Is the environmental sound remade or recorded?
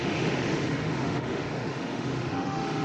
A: remade